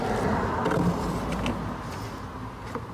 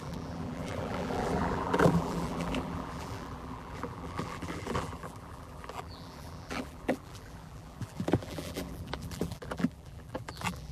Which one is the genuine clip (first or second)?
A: first